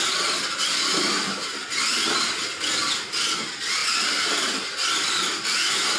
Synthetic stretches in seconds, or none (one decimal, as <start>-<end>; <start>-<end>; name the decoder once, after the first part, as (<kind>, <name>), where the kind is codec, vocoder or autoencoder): none